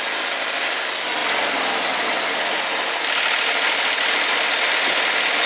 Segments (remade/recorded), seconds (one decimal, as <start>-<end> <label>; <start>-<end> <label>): 0.0-5.5 recorded